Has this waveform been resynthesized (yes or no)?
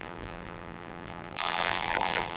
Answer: yes